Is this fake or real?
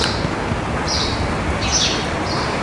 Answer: real